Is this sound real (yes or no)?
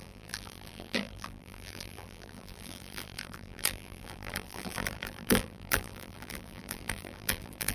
no